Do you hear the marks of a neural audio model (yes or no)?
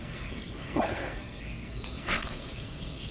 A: yes